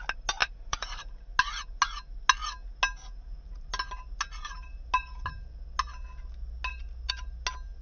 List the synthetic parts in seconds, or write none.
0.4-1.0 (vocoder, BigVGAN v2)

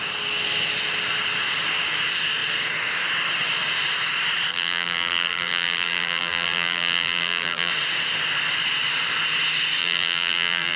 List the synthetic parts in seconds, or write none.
4.5-7.7 (vocoder, BigVGAN v2); 9.8-10.8

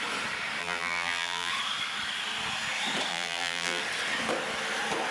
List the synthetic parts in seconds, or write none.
0.6-1.5 (vocoder, BigVGAN v2); 3.1-3.8